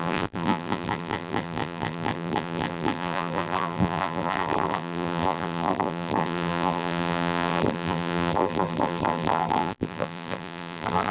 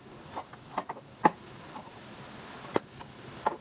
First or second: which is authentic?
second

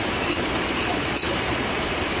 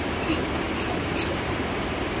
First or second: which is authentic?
second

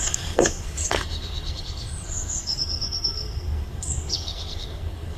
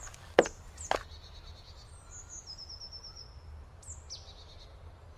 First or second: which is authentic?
second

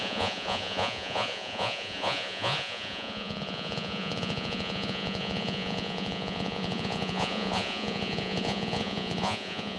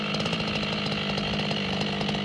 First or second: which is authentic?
second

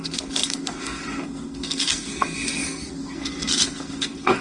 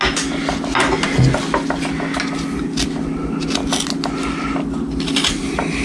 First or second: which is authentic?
second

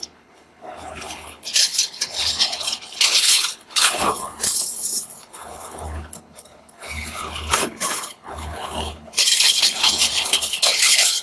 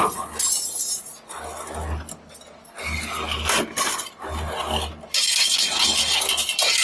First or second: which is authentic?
second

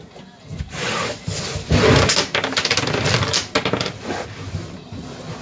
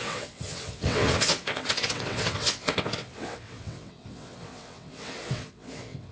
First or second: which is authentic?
first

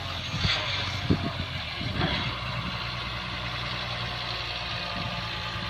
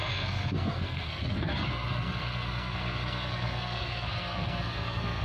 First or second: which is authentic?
first